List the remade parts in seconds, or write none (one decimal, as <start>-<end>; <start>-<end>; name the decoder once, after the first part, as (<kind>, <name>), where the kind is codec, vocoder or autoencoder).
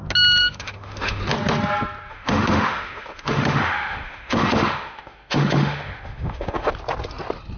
0.4-1.2 (autoencoder, DAC-VAE); 2.1-6.7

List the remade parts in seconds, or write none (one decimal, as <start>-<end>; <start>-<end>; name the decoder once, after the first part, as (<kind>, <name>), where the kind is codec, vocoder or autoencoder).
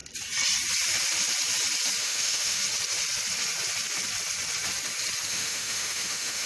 2.0-2.6 (autoencoder, DAC-VAE); 5.3-6.5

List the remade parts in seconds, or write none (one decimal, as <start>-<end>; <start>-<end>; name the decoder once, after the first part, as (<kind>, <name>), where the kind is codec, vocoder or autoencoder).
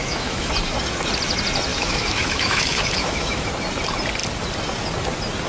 0.0-0.5 (autoencoder, DAC-VAE); 1.7-3.5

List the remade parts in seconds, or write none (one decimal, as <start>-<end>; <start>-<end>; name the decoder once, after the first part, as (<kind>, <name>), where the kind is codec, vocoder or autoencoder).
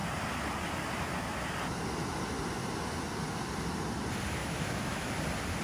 4.4-5.1 (autoencoder, DAC-VAE)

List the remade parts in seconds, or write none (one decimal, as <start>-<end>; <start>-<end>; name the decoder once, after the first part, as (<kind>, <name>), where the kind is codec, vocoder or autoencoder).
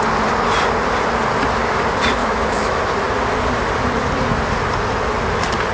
2.2-2.8 (autoencoder, DAC-VAE)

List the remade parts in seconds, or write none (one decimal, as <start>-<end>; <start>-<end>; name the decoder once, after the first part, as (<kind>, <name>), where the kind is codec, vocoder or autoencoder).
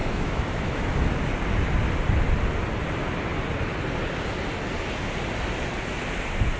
0.0-1.0 (autoencoder, DAC-VAE)